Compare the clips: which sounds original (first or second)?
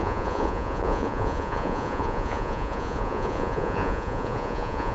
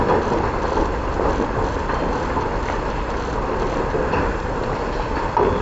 second